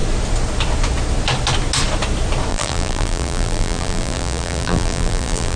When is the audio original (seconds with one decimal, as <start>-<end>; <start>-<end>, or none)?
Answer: 0.0-2.5